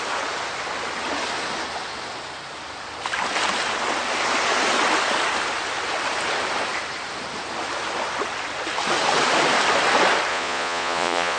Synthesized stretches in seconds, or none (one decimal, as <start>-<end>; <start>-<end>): 10.3-11.4